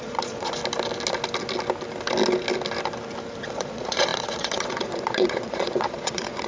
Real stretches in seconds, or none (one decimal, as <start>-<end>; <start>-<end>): 0.6-3.4